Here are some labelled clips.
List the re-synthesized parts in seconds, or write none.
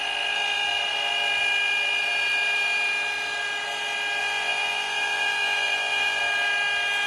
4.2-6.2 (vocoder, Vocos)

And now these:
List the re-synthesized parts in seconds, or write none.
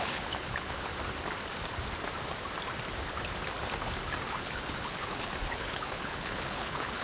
0.0-0.9 (codec, HILCodec); 4.2-7.0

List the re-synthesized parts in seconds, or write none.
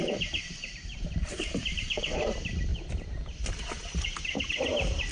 0.0-2.7 (vocoder, BigVGAN v2)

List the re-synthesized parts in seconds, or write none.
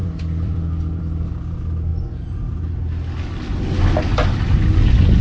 0.0-1.0 (vocoder, BigVGAN v2); 4.1-4.7